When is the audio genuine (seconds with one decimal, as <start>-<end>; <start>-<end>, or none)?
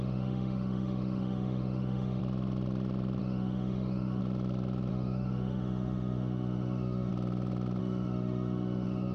2.2-3.2; 4.2-4.9; 7.1-7.8